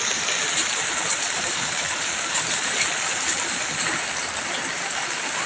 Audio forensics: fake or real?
real